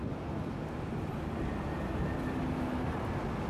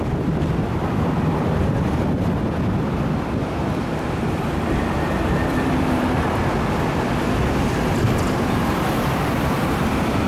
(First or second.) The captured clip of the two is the first